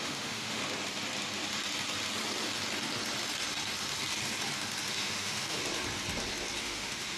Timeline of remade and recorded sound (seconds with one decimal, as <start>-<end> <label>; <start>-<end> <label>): 0.0-0.6 remade; 0.6-4.9 recorded; 4.9-5.6 remade; 5.6-6.6 recorded; 6.6-7.2 remade